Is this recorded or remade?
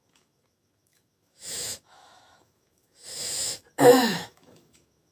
remade